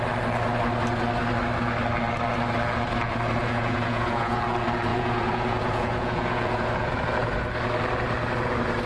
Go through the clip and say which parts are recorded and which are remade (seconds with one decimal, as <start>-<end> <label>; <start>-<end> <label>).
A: 0.0-3.4 recorded; 3.4-4.4 remade; 4.4-4.9 recorded; 4.9-7.0 remade; 7.0-8.9 recorded